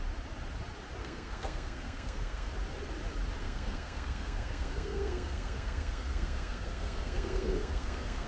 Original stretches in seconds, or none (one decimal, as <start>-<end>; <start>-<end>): 0.0-1.0; 2.5-3.4